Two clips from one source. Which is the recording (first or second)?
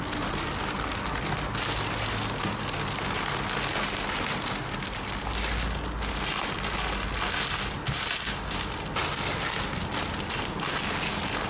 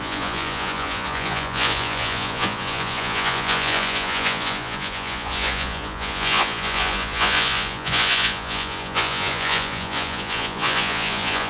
first